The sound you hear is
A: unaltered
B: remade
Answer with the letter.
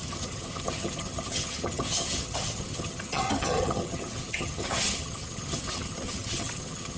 B